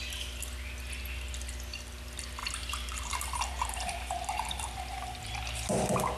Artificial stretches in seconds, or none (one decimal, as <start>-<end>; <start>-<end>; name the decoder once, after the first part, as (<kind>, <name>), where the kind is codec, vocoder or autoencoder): 2.4-5.3 (vocoder, BigVGAN v2)